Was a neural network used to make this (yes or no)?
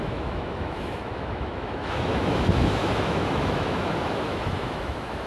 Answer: yes